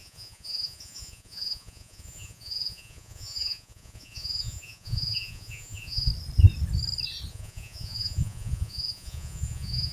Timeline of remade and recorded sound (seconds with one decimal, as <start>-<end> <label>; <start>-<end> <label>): 0.0-6.1 remade; 6.1-7.3 recorded; 7.3-9.9 remade